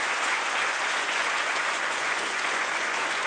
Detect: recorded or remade remade